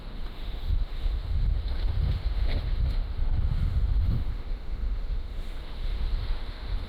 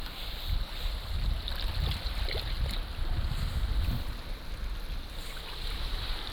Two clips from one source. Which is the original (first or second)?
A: second